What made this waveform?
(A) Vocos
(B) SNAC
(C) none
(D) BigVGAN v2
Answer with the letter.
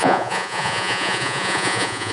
A